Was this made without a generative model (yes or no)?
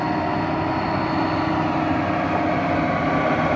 yes